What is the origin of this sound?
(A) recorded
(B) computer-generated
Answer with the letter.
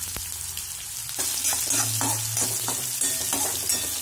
A